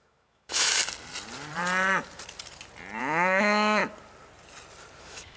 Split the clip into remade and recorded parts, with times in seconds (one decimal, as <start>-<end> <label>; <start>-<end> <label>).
0.0-0.8 remade; 0.8-3.0 recorded; 3.0-3.8 remade; 3.8-5.0 recorded; 5.0-5.4 remade